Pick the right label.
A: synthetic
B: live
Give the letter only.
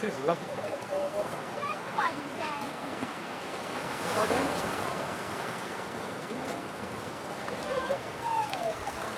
A